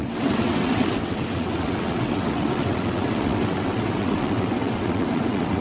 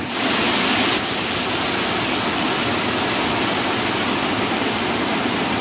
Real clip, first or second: second